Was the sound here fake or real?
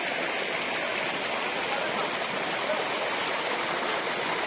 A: real